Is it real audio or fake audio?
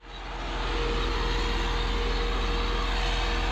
real